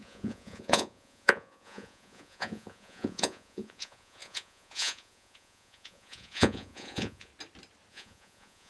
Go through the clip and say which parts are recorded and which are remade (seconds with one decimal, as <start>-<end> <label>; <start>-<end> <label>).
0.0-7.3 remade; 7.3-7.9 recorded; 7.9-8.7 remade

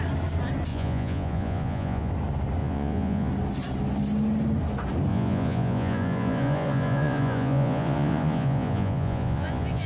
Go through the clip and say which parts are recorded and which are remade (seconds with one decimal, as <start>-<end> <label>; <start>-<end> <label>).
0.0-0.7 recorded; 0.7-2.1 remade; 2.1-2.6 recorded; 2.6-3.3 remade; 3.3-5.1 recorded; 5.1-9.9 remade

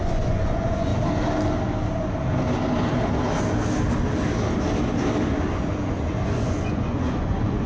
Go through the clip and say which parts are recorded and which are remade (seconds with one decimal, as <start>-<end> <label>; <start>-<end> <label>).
0.0-0.9 remade; 0.9-5.5 recorded; 5.5-7.7 remade

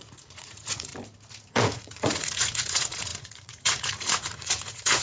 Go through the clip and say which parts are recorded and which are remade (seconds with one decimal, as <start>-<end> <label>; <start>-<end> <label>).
0.0-0.9 remade; 0.9-1.5 recorded; 1.5-5.0 remade